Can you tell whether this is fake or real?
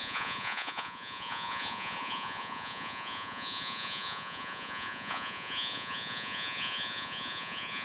fake